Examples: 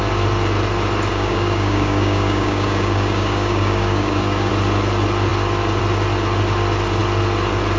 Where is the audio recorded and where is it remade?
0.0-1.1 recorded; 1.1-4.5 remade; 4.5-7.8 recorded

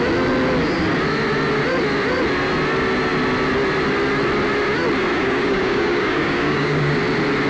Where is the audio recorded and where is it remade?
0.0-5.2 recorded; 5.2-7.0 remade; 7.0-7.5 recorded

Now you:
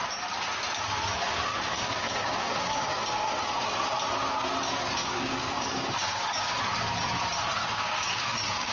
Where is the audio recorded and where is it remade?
0.0-1.5 recorded; 1.5-3.7 remade; 3.7-5.0 recorded; 5.0-6.6 remade; 6.6-7.6 recorded; 7.6-8.7 remade